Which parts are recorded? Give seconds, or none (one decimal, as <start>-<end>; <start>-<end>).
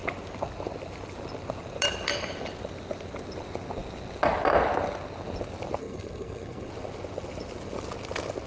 0.0-5.8; 6.7-8.5